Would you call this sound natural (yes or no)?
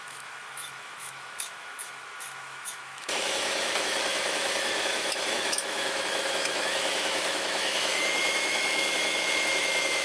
no